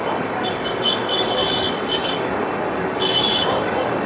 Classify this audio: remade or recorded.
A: remade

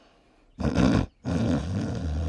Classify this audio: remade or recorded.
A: recorded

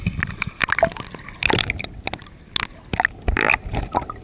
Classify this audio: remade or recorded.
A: recorded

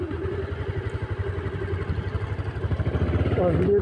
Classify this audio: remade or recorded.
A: recorded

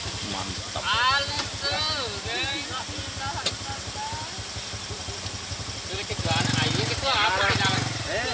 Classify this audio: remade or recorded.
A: recorded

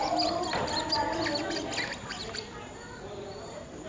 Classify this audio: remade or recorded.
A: recorded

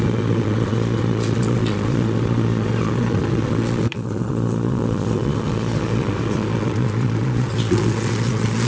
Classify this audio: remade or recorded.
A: remade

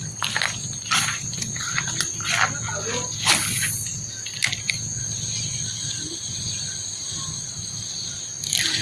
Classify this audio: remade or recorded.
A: recorded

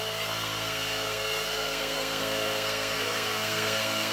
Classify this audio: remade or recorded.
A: remade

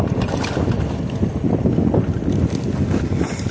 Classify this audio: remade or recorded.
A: recorded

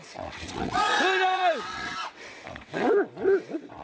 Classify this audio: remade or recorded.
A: remade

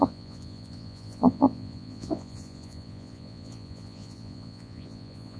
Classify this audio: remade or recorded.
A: remade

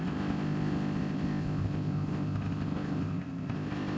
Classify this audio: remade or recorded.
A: remade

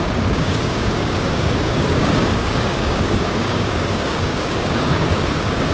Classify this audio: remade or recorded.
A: remade